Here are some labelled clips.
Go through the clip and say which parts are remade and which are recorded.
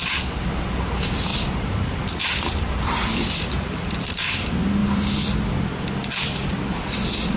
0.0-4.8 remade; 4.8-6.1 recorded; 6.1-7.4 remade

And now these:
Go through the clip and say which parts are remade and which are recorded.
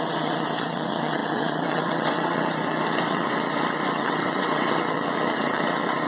0.0-6.1 remade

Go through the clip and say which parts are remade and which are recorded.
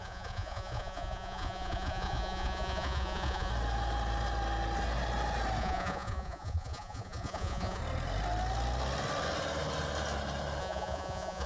0.0-3.5 remade; 3.5-5.6 recorded; 5.6-7.8 remade; 7.8-10.6 recorded; 10.6-11.5 remade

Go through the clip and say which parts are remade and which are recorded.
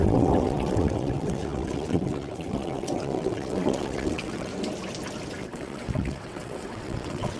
0.0-4.5 remade; 4.5-5.4 recorded; 5.4-7.4 remade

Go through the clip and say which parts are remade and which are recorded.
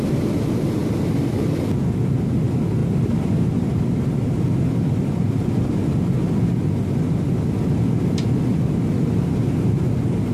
0.0-2.8 recorded; 2.8-8.0 remade; 8.0-8.5 recorded; 8.5-9.2 remade; 9.2-10.3 recorded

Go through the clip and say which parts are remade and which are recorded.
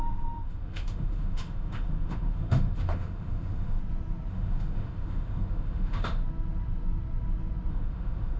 0.0-3.8 remade; 3.8-4.3 recorded; 4.3-6.2 remade; 6.2-7.7 recorded; 7.7-8.4 remade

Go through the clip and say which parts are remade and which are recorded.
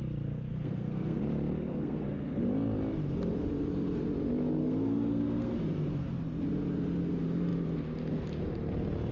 0.0-0.5 recorded; 0.5-1.2 remade; 1.2-1.7 recorded; 1.7-2.4 remade; 2.4-4.6 recorded; 4.6-5.5 remade; 5.5-9.1 recorded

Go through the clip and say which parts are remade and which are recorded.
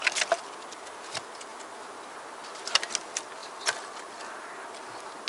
0.0-5.3 recorded